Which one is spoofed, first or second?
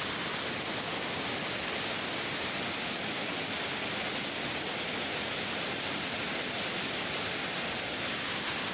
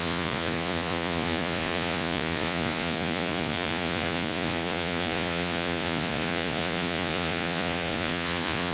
second